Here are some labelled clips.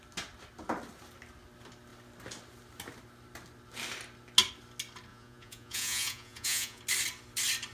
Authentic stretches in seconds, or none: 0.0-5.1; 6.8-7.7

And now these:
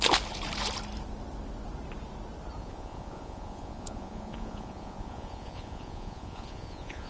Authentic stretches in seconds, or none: 0.0-2.6

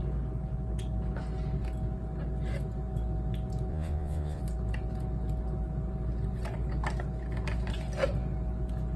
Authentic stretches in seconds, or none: 0.0-3.7; 4.4-9.0